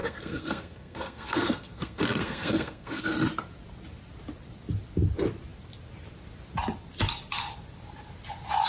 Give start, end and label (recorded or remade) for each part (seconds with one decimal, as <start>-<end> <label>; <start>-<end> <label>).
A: 0.0-3.0 remade; 3.0-8.7 recorded